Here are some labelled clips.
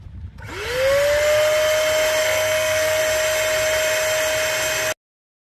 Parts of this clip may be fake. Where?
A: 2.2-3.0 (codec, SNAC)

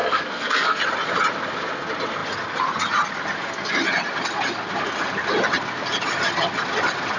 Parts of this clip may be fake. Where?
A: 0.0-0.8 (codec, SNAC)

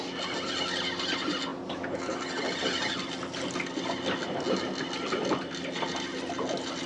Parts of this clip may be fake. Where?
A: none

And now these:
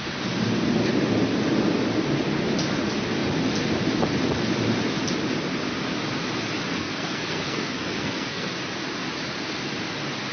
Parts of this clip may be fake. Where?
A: 6.7-8.5 (codec, SNAC)